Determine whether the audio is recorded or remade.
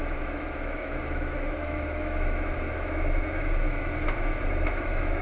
remade